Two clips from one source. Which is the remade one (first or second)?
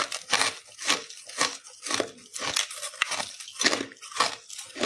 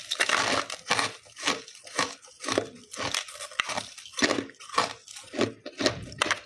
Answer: second